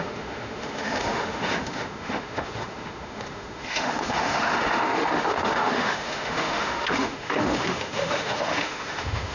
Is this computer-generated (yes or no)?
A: yes